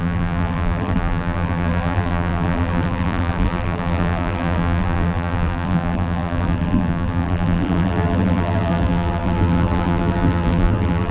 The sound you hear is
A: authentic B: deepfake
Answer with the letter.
B